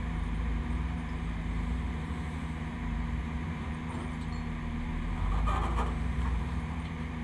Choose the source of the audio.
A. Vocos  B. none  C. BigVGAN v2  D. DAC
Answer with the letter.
C